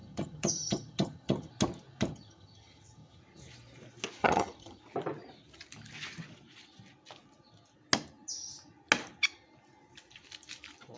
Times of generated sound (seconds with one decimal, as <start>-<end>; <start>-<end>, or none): 0.0-1.5; 2.1-3.2; 4.2-4.8